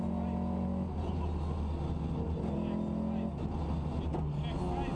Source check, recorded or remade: recorded